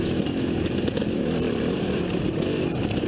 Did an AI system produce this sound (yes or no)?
no